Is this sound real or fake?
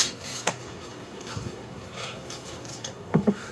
fake